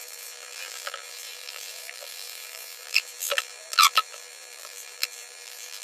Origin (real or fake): fake